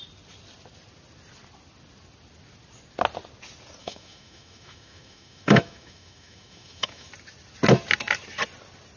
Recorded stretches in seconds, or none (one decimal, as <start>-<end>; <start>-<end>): 0.0-3.8; 7.1-9.0